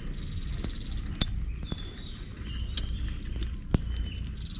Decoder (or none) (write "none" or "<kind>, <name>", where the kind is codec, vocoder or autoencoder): none